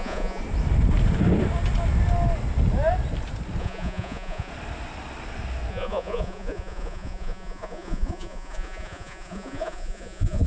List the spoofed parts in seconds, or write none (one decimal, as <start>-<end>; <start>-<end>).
0.0-0.4; 3.6-4.5; 5.7-10.5